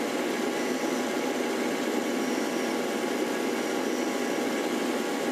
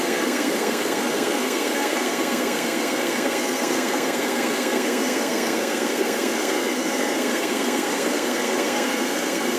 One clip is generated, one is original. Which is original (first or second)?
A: first